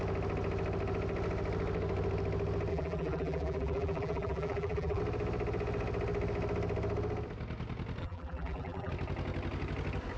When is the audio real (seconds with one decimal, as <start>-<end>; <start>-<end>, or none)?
0.0-2.7; 5.0-8.0; 8.9-10.2